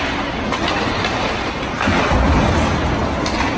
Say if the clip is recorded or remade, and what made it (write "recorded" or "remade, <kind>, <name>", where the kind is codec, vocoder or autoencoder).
recorded